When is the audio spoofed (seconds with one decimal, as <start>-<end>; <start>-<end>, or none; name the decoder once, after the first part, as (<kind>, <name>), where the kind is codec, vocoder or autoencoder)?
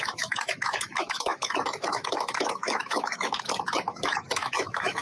0.0-5.0 (autoencoder, DAC-VAE)